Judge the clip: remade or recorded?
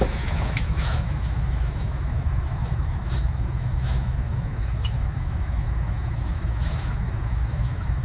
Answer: remade